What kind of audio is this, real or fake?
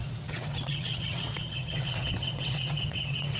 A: fake